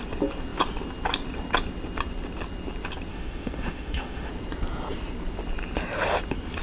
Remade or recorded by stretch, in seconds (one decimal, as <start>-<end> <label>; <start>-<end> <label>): 0.0-3.1 recorded; 3.1-4.3 remade; 4.3-6.6 recorded